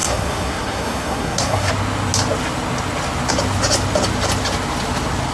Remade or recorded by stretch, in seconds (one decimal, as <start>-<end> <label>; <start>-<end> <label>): 0.0-1.7 remade; 1.7-5.3 recorded